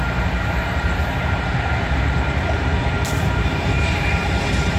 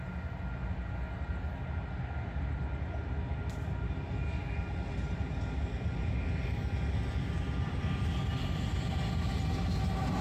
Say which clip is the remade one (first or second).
first